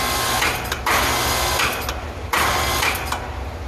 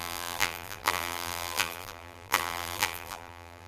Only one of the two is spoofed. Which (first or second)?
second